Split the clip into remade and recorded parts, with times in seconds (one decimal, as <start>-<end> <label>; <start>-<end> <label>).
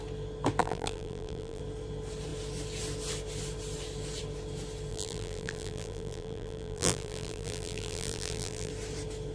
0.0-0.6 recorded; 0.6-1.6 remade; 1.6-4.9 recorded; 4.9-8.7 remade; 8.7-9.3 recorded